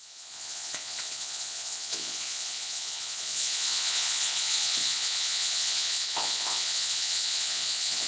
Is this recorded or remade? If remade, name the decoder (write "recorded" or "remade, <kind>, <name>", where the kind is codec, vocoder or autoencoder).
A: remade, vocoder, Vocos